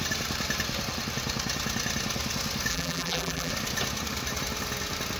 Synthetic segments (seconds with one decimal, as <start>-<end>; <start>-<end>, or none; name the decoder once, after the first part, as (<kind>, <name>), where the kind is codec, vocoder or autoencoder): 2.7-3.5 (vocoder, BigVGAN v2)